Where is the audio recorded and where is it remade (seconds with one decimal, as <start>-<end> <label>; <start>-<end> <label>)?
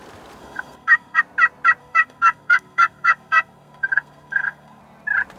0.0-0.4 recorded; 0.4-1.2 remade; 1.2-1.8 recorded; 1.8-4.8 remade; 4.8-5.4 recorded